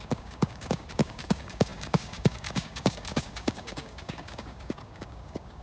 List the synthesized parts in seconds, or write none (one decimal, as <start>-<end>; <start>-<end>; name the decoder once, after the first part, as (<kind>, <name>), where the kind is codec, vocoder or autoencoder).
0.0-5.6 (codec, DAC)